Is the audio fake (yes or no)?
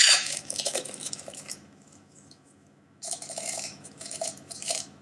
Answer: yes